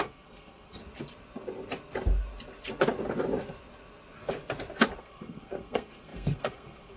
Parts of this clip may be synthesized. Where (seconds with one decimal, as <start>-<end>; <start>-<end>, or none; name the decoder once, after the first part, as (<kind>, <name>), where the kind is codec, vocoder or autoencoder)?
0.0-0.8 (codec, SNAC); 5.0-7.0